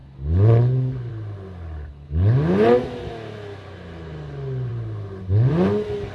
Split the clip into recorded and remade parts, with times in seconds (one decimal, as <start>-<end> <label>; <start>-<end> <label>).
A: 0.0-6.1 recorded